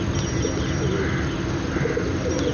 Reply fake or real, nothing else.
real